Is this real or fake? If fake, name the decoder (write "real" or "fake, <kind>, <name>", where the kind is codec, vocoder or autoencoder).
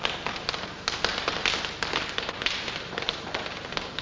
real